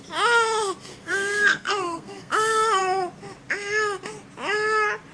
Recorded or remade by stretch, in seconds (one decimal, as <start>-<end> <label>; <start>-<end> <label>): 0.0-0.9 recorded; 0.9-2.3 remade; 2.3-5.1 recorded